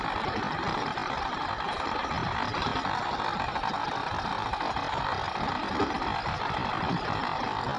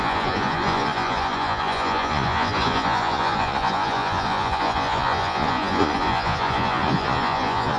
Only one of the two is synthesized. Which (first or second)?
second